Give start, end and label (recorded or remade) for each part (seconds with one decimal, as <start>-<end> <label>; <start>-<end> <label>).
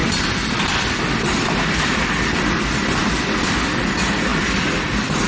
0.0-3.2 remade; 3.2-4.3 recorded; 4.3-5.3 remade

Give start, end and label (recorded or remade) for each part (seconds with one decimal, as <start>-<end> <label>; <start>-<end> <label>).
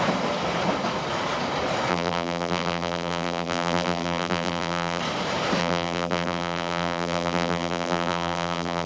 0.0-1.9 recorded; 1.9-5.0 remade; 5.0-5.6 recorded; 5.6-8.9 remade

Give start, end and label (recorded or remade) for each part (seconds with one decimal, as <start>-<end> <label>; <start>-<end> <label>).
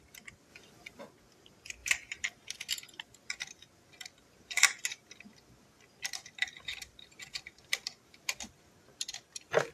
0.0-0.5 recorded; 0.5-1.0 remade; 1.0-6.7 recorded; 6.7-8.2 remade; 8.2-9.7 recorded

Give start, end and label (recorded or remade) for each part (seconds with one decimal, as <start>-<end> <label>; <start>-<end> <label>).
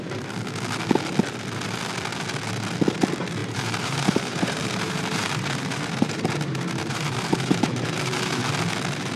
0.0-3.4 recorded; 3.4-8.5 remade; 8.5-9.2 recorded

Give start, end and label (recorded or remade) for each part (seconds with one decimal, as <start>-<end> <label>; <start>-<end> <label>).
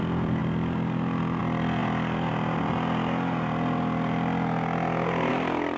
0.0-5.8 recorded